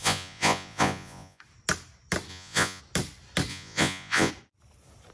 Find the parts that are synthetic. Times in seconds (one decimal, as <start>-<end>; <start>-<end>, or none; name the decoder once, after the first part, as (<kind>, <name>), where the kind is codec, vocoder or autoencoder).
0.0-1.4 (vocoder, Vocos); 2.3-2.8; 3.5-4.3